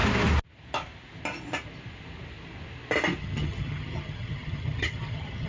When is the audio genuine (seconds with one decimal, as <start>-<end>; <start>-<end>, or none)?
0.0-3.2